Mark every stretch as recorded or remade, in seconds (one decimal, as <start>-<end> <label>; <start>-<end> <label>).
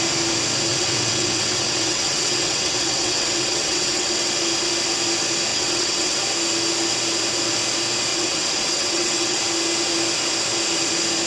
0.0-0.7 recorded; 0.7-4.3 remade; 4.3-5.5 recorded; 5.5-6.2 remade; 6.2-8.1 recorded; 8.1-9.4 remade; 9.4-11.3 recorded